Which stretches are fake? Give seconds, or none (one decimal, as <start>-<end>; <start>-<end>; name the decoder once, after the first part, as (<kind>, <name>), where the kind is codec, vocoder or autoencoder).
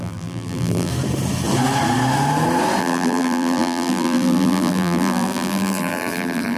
0.0-0.9 (vocoder, BigVGAN v2); 2.8-6.6